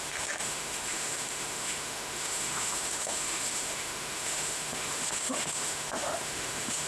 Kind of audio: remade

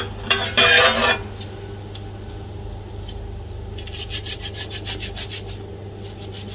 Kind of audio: recorded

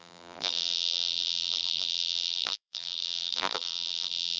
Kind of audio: remade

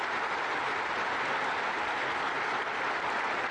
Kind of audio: remade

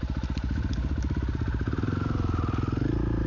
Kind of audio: recorded